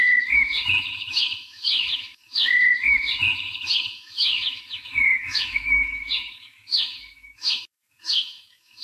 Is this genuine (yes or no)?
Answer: no